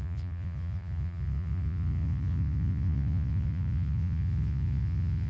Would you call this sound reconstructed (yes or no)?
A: yes